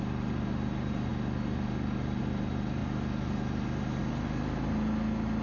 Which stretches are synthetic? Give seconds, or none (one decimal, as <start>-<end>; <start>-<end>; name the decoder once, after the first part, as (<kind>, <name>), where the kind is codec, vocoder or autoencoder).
none